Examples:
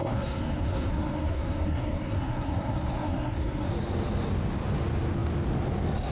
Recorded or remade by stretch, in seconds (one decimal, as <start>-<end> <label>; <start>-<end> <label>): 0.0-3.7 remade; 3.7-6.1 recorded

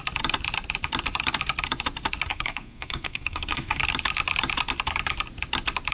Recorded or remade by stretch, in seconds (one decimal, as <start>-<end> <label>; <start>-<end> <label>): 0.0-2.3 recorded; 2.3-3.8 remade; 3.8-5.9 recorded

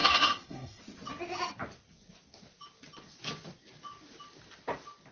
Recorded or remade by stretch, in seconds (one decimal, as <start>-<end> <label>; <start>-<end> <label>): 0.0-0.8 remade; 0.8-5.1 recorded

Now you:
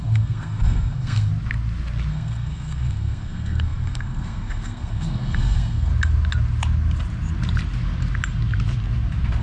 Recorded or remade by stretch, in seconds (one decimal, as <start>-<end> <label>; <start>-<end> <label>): 0.0-1.3 remade; 1.3-2.1 recorded; 2.1-5.9 remade; 5.9-9.4 recorded